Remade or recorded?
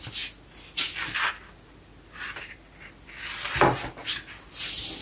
recorded